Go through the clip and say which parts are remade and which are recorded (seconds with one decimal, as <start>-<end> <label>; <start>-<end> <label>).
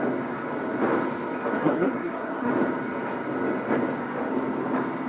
0.0-1.6 recorded; 1.6-2.5 remade; 2.5-5.1 recorded